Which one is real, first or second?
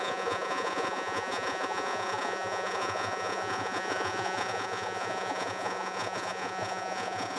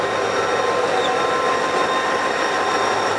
second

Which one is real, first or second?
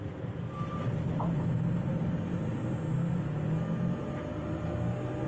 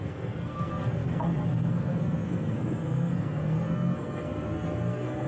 first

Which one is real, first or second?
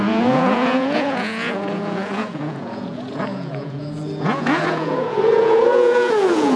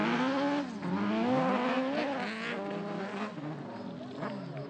second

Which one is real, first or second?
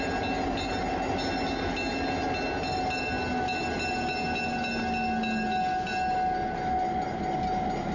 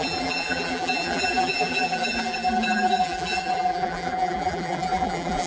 first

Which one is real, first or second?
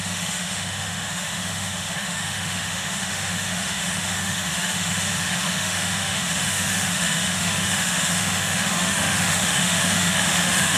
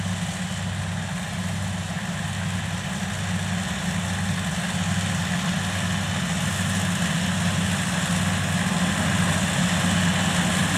second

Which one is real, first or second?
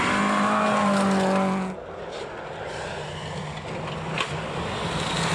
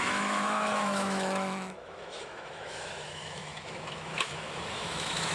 first